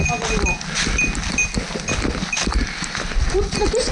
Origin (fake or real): real